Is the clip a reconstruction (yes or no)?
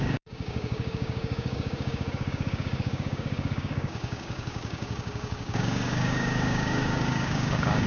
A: yes